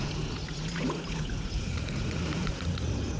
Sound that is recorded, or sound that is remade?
remade